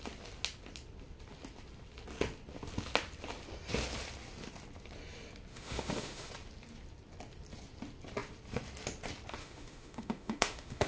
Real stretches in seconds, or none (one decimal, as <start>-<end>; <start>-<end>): 0.0-5.5; 6.3-9.4